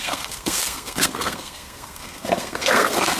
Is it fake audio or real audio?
fake